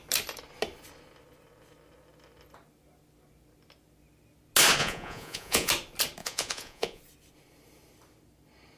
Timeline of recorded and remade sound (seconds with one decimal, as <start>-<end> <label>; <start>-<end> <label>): 0.0-4.8 recorded; 4.8-5.7 remade; 5.7-6.2 recorded; 6.2-7.0 remade; 7.0-8.8 recorded